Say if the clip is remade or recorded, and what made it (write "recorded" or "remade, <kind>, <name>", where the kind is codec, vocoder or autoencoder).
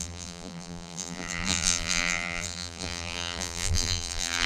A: remade, vocoder, BigVGAN v2